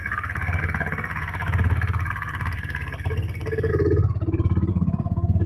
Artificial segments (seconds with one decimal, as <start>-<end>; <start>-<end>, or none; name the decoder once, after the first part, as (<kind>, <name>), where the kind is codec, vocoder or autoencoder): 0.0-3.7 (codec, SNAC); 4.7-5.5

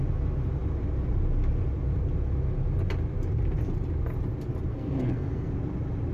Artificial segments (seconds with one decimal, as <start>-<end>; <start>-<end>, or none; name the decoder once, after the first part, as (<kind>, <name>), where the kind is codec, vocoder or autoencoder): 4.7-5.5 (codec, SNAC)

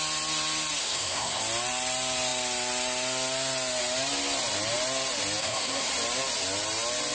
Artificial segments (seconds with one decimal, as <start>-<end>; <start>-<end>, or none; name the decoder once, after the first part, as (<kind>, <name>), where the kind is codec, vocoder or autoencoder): 0.8-1.4 (codec, SNAC); 5.4-5.9

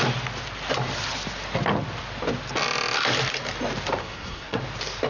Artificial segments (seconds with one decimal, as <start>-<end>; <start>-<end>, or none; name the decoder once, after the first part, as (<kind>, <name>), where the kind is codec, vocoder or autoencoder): 4.0-4.6 (codec, SNAC)

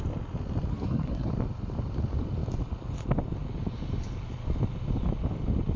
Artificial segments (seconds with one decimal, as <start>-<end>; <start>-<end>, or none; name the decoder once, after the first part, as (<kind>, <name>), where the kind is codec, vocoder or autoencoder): 0.7-1.3 (codec, SNAC)

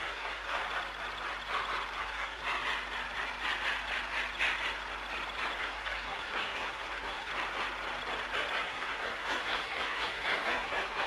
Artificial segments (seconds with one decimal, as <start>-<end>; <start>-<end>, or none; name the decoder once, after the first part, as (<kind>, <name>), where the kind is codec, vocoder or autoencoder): 0.0-0.6 (codec, SNAC); 2.0-2.4; 5.6-7.3; 8.5-11.1

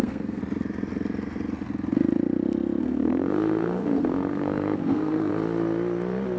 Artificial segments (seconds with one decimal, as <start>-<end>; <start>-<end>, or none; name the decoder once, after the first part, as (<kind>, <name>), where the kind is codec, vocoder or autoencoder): 0.0-0.4 (codec, SNAC); 2.8-5.3